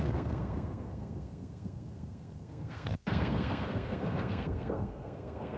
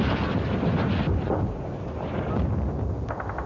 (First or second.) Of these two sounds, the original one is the second